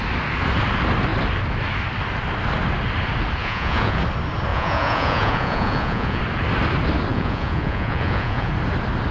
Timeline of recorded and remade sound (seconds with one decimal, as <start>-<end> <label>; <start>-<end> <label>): 0.0-3.4 recorded; 3.4-4.0 remade; 4.0-4.5 recorded; 4.5-6.2 remade; 6.2-7.1 recorded; 7.1-8.5 remade; 8.5-9.1 recorded